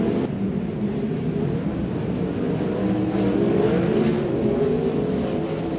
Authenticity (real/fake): real